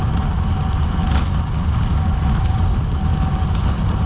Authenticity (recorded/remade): recorded